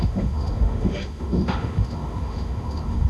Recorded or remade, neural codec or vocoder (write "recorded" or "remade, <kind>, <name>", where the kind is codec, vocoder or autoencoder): remade, autoencoder, DAC-VAE